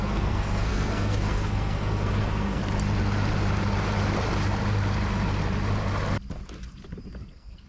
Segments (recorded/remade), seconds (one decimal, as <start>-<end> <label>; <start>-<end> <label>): 0.0-2.6 remade; 2.6-7.2 recorded; 7.2-7.7 remade

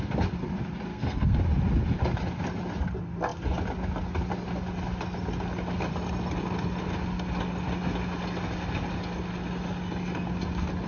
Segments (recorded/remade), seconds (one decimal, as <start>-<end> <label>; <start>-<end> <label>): 0.0-0.9 recorded; 0.9-1.4 remade; 1.4-10.9 recorded